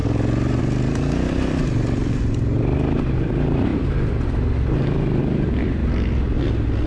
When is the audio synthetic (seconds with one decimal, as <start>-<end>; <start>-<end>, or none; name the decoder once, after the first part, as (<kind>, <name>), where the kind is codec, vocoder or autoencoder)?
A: 0.0-5.8 (vocoder, BigVGAN v2)

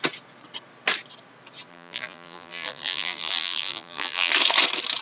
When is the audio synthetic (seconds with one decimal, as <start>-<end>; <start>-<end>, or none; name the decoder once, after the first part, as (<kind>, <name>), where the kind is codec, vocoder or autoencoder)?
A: 1.7-4.3 (vocoder, BigVGAN v2)

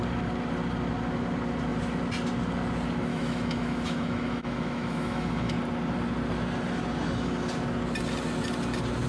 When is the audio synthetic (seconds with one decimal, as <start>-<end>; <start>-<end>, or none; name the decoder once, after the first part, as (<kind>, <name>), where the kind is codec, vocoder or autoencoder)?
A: 3.1-5.6 (autoencoder, DAC-VAE)

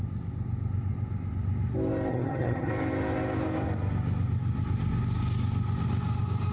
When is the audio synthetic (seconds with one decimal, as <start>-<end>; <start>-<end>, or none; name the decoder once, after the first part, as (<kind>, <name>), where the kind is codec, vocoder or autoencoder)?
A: 2.1-2.7 (vocoder, HiFi-GAN)

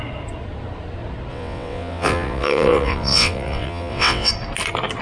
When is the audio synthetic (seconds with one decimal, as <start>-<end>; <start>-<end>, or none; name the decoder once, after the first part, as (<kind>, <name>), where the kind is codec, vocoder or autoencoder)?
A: 1.3-4.3 (vocoder, WaveNeXt)

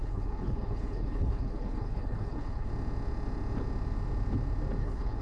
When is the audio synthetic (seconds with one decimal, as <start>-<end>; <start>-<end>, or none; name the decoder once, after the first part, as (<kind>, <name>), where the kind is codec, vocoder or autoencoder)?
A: 0.0-2.7 (codec, HILCodec); 4.8-5.2

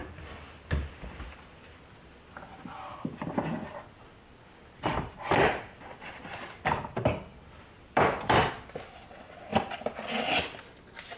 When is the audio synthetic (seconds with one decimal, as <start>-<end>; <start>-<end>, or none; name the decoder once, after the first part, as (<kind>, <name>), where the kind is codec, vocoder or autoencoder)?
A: 0.0-1.8 (vocoder, BigVGAN v2); 7.3-8.5